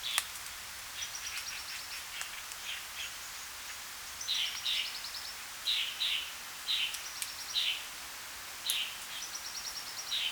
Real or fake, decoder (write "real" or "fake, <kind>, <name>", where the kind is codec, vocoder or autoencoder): real